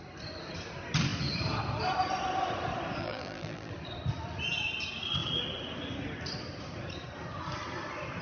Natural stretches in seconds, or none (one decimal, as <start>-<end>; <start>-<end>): 0.0-3.0; 3.7-8.2